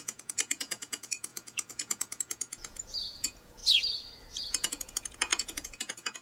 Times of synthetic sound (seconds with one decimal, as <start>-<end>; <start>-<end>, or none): 0.0-3.6; 4.4-6.2